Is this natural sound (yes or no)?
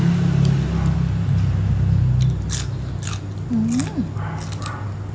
yes